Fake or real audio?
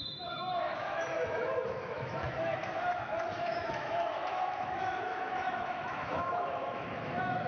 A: fake